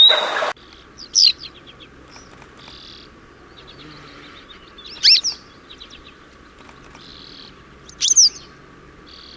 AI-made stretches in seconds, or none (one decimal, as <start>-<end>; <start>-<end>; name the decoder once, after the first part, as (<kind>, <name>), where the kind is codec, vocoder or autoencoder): none